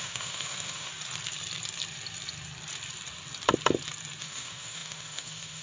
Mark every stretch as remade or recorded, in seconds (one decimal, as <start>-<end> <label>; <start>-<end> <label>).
0.0-0.9 remade; 0.9-4.2 recorded; 4.2-5.6 remade